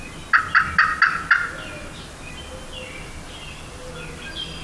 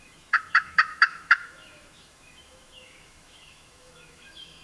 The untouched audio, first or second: first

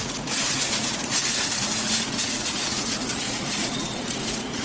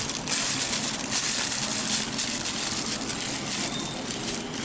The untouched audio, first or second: second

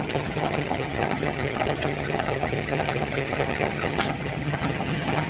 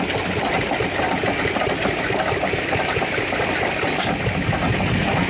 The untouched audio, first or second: second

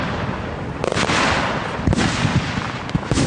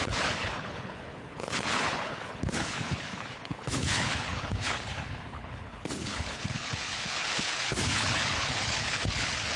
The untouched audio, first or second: first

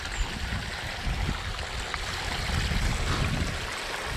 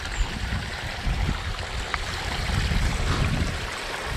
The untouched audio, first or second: first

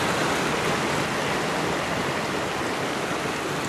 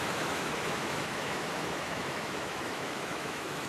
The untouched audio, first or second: first